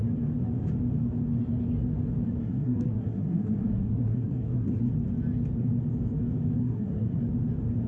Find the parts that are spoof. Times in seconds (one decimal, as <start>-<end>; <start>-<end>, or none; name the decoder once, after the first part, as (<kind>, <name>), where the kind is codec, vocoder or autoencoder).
2.4-4.9 (codec, SNAC); 6.6-7.2